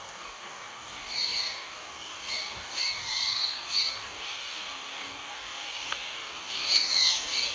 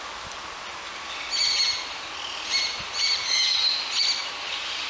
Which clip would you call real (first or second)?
second